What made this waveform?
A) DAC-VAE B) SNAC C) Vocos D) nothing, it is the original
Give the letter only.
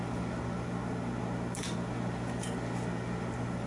D